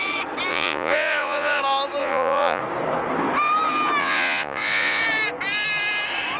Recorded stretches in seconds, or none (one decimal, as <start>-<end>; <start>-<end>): 0.0-0.5; 1.6-2.0; 2.6-4.0; 5.0-6.4